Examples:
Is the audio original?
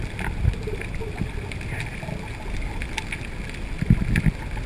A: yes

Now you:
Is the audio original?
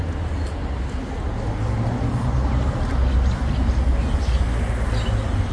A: yes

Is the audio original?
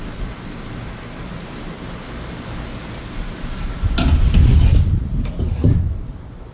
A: yes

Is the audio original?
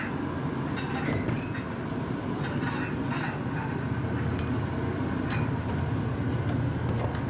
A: yes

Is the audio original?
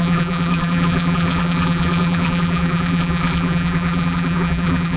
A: no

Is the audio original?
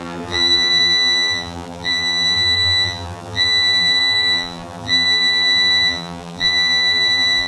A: no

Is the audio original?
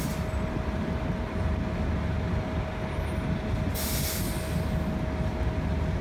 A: yes